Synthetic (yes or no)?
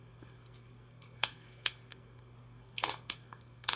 yes